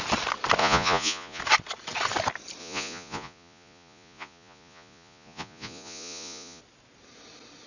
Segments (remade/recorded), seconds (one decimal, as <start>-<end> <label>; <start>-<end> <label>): 0.0-0.6 recorded; 0.6-1.4 remade; 1.4-2.6 recorded; 2.6-6.6 remade; 6.6-7.7 recorded